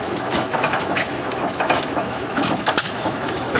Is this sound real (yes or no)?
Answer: no